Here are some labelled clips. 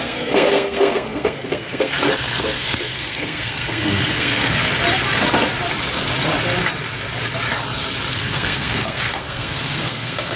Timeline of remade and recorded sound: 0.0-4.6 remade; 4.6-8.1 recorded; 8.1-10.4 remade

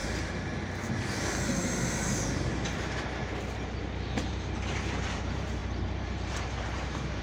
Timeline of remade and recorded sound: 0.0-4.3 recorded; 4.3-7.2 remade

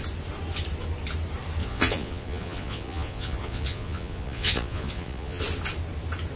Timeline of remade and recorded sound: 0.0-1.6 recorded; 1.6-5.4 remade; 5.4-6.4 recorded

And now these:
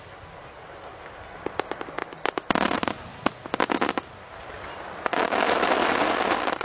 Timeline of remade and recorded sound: 0.0-6.6 recorded

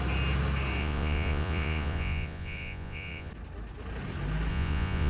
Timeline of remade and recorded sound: 0.0-0.8 recorded; 0.8-3.3 remade; 3.3-4.5 recorded; 4.5-5.1 remade